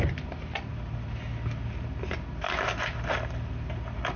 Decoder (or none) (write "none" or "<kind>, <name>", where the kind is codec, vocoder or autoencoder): none